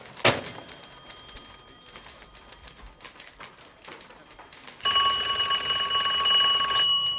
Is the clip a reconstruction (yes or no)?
no